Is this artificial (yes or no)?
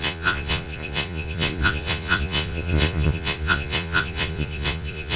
yes